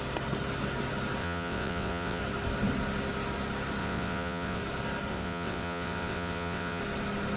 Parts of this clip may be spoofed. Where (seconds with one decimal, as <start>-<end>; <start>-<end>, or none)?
1.2-2.2; 3.8-4.6; 5.1-6.8